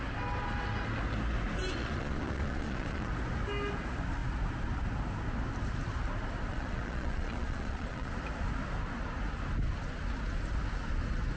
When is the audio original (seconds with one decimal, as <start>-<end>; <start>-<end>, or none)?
0.0-1.8; 3.1-6.5; 8.1-11.4